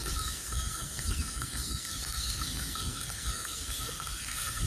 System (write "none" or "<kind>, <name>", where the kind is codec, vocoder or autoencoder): codec, SNAC